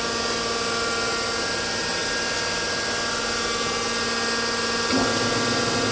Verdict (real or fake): real